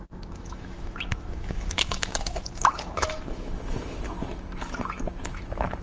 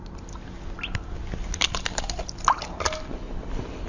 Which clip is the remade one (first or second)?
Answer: first